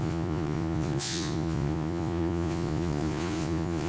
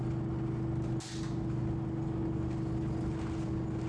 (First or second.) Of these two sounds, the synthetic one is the first